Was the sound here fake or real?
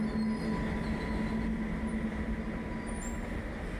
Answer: real